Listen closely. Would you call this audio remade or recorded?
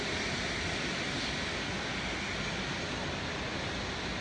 recorded